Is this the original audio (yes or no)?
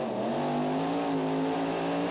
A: yes